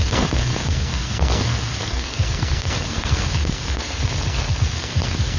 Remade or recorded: remade